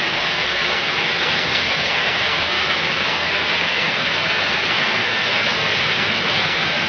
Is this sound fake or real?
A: fake